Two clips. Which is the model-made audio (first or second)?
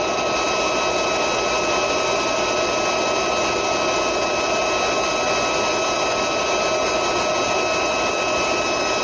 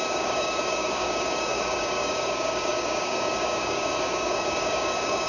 second